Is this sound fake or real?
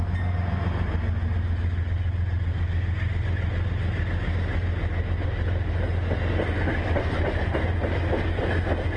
real